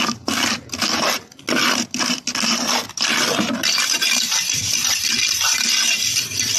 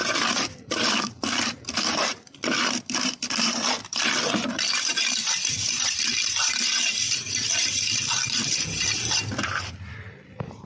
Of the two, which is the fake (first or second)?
second